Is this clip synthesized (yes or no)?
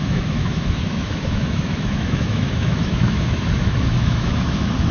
yes